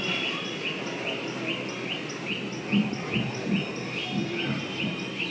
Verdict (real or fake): real